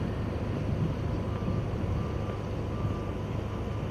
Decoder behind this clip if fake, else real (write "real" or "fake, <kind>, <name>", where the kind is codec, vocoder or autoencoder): real